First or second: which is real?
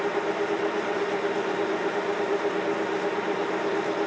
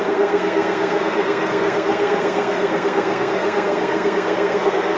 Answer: first